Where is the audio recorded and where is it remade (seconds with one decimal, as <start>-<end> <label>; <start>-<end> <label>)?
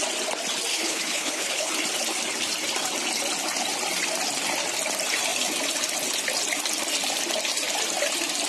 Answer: 0.0-0.7 recorded; 0.7-1.7 remade; 1.7-8.5 recorded